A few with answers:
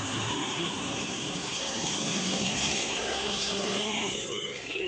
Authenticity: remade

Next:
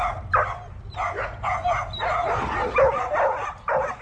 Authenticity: recorded